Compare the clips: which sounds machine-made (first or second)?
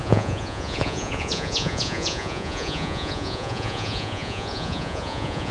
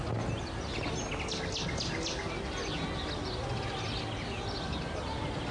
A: first